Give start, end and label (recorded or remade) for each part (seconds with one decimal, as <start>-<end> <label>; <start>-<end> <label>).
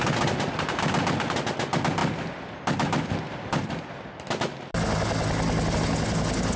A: 0.0-6.6 recorded